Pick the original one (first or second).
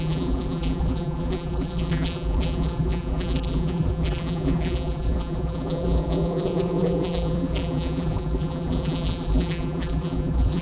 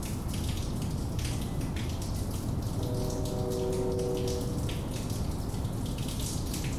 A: second